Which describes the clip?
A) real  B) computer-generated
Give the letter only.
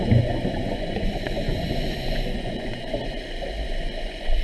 B